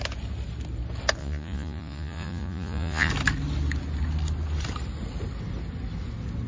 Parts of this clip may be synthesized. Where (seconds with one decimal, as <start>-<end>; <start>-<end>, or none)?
1.2-3.1